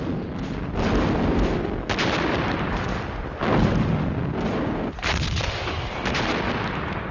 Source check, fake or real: fake